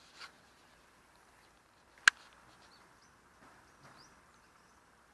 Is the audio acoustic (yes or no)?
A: yes